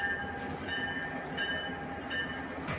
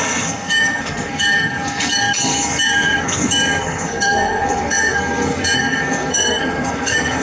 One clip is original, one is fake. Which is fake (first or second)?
second